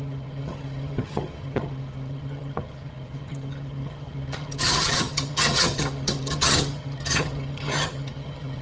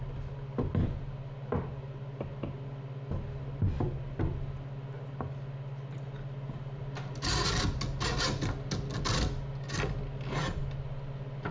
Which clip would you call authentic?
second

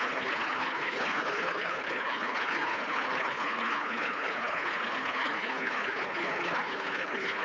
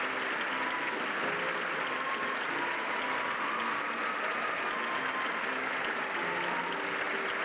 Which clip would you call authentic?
second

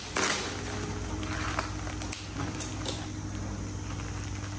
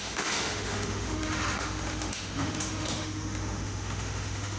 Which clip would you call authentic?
first